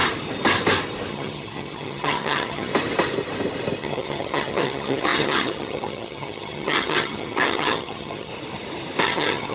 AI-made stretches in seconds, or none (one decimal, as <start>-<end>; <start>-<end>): 1.1-2.7; 3.8-8.3; 9.0-9.5